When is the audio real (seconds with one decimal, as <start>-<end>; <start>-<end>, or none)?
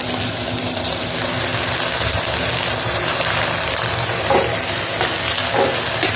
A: 0.0-6.2